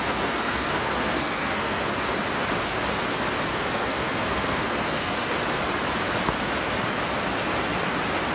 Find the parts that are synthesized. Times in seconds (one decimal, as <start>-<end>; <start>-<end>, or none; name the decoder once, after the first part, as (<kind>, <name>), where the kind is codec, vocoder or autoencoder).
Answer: 0.0-1.9 (codec, SNAC); 3.5-5.3